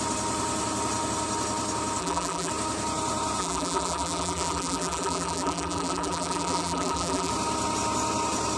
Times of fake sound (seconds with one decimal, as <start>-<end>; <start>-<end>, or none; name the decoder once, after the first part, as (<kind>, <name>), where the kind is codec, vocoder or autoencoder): 2.0-2.5 (vocoder, BigVGAN v2); 3.4-7.3